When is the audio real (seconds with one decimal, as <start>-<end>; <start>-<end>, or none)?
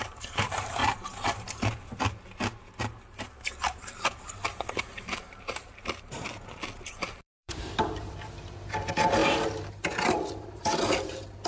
0.8-4.8; 6.3-6.9